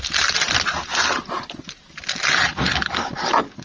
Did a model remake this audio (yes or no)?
no